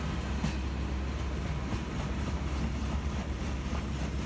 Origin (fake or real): real